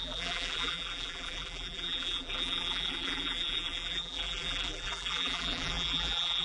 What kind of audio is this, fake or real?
fake